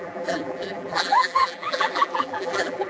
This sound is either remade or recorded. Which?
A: remade